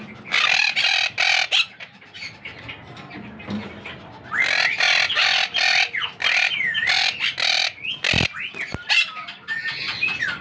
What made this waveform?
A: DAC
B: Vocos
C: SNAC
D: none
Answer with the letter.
D